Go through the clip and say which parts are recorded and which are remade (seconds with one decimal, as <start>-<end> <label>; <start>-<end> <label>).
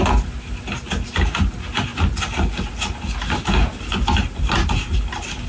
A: 0.0-5.5 recorded